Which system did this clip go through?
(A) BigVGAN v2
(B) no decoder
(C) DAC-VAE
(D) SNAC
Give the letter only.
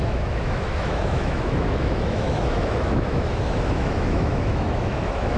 C